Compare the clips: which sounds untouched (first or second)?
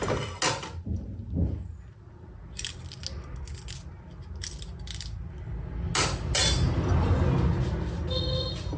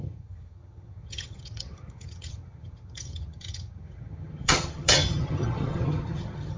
first